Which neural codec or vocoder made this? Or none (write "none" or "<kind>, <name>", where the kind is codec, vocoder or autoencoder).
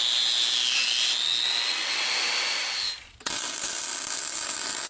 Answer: none